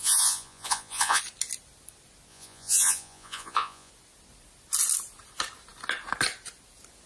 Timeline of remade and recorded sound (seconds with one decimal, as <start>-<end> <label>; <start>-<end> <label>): 0.0-1.2 remade; 1.2-2.3 recorded; 2.3-3.9 remade; 3.9-7.1 recorded